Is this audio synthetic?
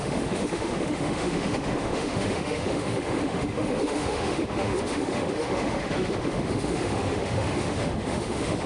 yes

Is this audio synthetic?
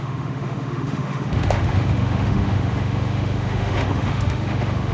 yes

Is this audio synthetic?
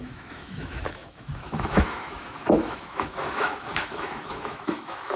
yes